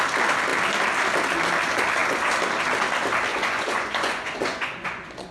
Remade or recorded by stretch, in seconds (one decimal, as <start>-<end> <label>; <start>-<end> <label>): 0.0-3.3 recorded; 3.3-5.3 remade

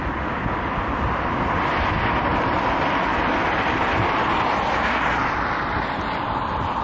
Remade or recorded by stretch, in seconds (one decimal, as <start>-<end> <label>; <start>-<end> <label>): 0.0-2.3 recorded; 2.3-6.8 remade

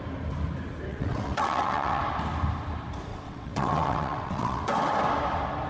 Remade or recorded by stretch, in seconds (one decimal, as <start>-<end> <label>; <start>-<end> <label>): 0.0-0.9 recorded; 0.9-2.0 remade; 2.0-3.1 recorded; 3.1-4.6 remade; 4.6-5.7 recorded

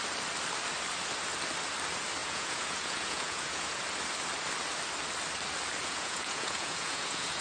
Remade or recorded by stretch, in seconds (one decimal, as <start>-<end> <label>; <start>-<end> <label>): 0.0-2.2 recorded; 2.2-3.8 remade; 3.8-5.8 recorded; 5.8-7.4 remade